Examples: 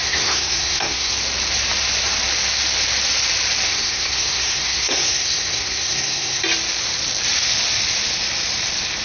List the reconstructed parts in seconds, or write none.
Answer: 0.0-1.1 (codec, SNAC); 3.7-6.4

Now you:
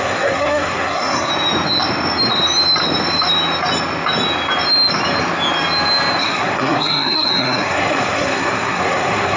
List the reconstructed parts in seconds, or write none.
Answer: 0.0-1.3 (codec, SNAC); 6.2-9.4

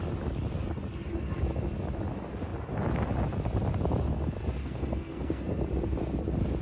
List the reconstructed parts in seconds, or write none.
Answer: 4.6-5.4 (codec, SNAC)

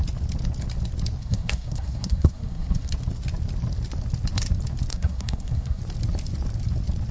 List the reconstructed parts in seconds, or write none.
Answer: 1.2-2.9 (codec, SNAC); 4.9-5.8

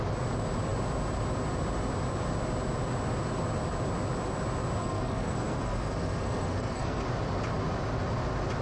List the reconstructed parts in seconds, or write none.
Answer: 4.8-7.0 (codec, SNAC)

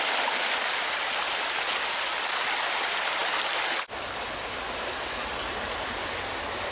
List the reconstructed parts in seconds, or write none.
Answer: none

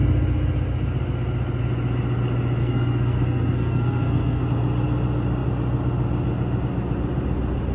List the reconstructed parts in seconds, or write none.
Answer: 2.6-4.4 (codec, SNAC)